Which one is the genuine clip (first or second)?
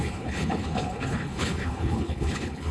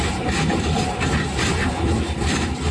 second